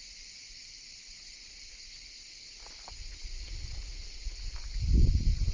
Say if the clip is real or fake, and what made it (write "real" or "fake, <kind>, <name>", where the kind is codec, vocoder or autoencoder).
fake, vocoder, BigVGAN v2